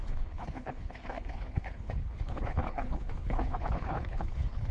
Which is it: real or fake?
fake